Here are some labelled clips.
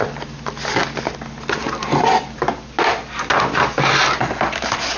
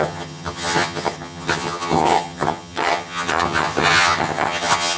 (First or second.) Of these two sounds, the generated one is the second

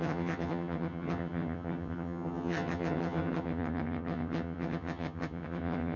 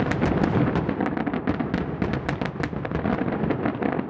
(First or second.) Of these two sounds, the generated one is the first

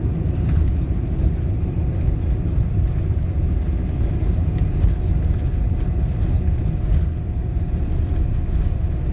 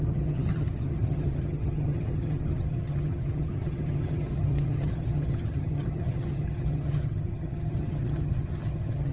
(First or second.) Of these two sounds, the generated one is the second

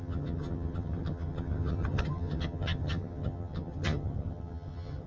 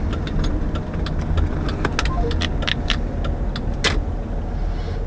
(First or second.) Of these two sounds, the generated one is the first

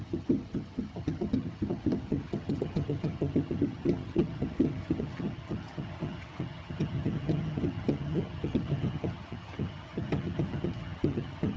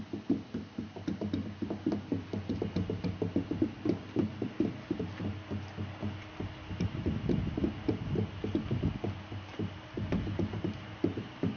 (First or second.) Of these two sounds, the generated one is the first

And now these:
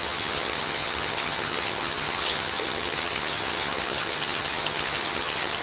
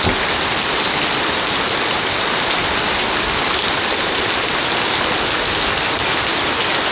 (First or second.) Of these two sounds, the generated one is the first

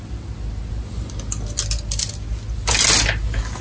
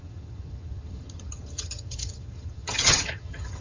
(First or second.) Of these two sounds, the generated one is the second